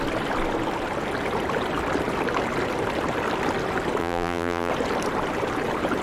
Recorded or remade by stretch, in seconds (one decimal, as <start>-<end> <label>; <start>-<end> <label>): 0.0-4.0 recorded; 4.0-4.7 remade; 4.7-6.0 recorded